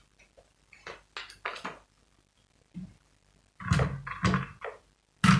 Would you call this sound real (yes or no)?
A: yes